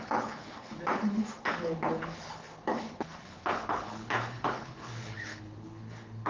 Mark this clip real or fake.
fake